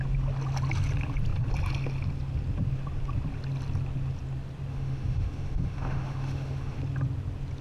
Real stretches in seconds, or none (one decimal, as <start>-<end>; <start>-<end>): 0.0-4.7; 6.8-7.6